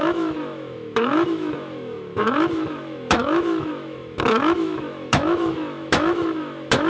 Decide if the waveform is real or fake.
fake